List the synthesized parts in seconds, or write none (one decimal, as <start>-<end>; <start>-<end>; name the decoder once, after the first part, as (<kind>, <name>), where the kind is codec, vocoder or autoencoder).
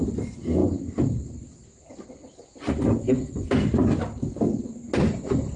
3.0-3.5 (codec, SNAC)